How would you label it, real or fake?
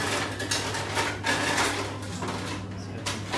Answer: real